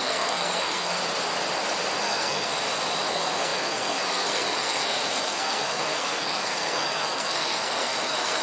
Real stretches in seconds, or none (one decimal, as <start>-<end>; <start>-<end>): 1.0-2.0; 2.5-3.1

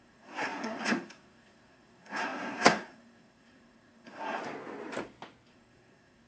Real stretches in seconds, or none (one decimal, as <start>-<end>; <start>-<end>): 4.4-5.5

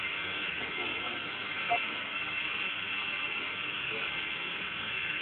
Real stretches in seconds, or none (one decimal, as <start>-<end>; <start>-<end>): none

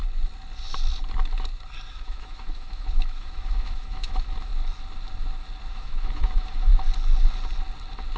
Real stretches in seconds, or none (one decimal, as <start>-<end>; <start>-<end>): 0.0-1.9; 4.5-5.7; 6.7-8.2

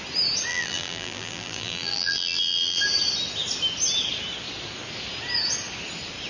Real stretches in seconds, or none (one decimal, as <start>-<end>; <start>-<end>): 0.0-0.5; 2.8-6.3

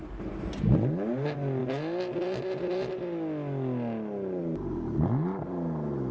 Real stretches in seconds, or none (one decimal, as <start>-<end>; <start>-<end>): 0.0-6.1

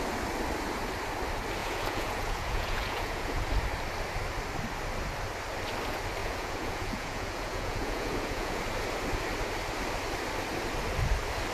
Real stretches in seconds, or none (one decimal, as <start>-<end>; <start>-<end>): 0.0-1.6; 3.4-6.2; 8.6-11.5

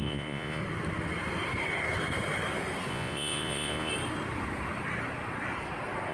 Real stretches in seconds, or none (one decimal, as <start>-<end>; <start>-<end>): 0.6-2.9; 3.9-6.1